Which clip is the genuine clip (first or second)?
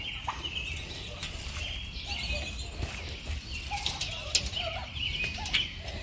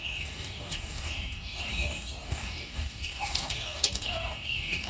first